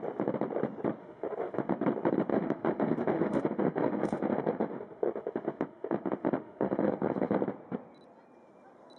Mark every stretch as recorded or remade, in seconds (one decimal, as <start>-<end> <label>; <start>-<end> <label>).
0.0-1.0 recorded; 1.0-1.7 remade; 1.7-2.3 recorded; 2.3-7.4 remade; 7.4-9.0 recorded